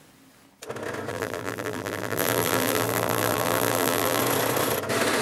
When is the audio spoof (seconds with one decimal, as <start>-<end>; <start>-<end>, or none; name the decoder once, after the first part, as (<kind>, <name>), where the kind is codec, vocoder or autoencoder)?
1.1-4.2 (vocoder, BigVGAN v2)